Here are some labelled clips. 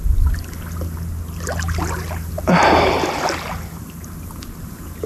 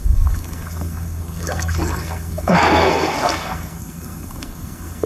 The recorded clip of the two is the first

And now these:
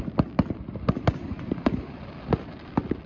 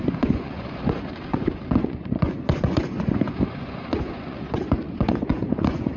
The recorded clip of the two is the first